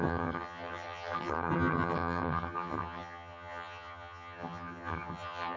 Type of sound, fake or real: fake